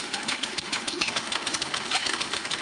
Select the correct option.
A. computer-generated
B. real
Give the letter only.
A